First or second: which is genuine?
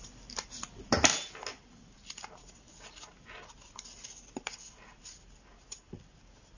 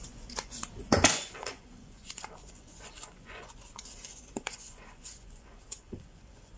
first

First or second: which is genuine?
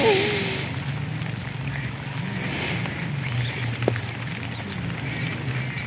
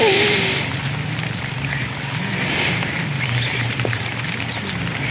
first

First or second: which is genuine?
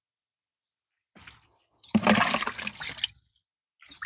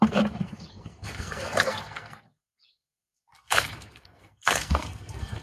first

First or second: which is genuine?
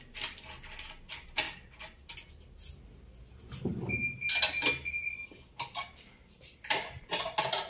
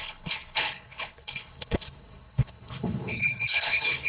first